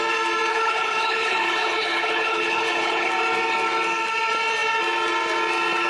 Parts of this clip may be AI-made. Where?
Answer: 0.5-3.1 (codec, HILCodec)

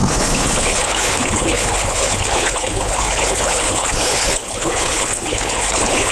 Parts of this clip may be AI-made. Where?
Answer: 0.0-6.1 (codec, HILCodec)

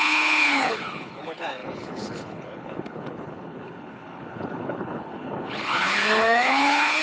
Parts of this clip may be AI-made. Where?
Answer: 0.0-7.0 (codec, HILCodec)

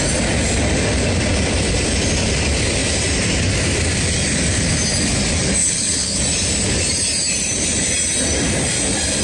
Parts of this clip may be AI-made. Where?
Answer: 5.6-6.2 (codec, HILCodec)

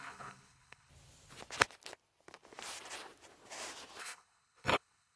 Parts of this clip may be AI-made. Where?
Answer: 0.0-0.9 (codec, HILCodec); 4.0-5.2

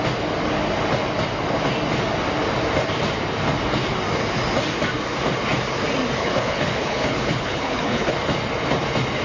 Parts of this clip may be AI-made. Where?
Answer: 6.2-8.1 (codec, HILCodec)

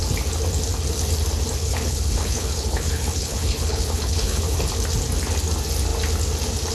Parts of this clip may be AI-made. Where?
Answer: 1.6-4.4 (codec, HILCodec)